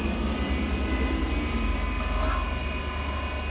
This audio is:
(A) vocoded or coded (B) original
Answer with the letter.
B